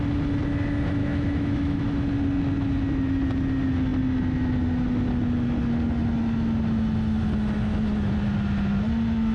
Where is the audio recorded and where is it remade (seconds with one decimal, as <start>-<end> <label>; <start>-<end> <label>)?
0.0-1.0 recorded; 1.0-1.9 remade; 1.9-9.3 recorded